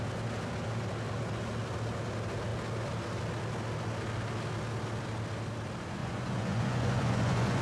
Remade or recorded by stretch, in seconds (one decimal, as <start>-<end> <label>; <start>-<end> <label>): 0.0-6.0 recorded; 6.0-7.6 remade